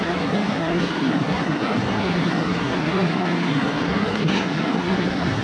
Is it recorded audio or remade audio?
remade